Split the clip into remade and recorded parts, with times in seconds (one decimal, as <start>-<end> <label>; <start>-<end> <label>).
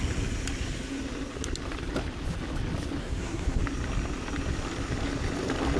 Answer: 0.0-3.0 recorded; 3.0-3.6 remade; 3.6-5.8 recorded